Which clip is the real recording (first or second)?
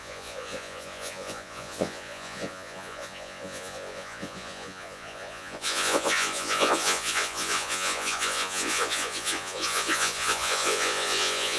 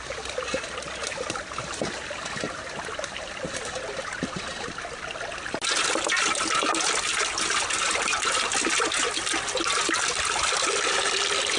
second